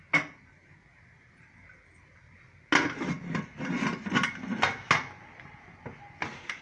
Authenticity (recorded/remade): recorded